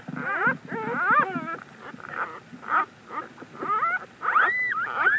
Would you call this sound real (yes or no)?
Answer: yes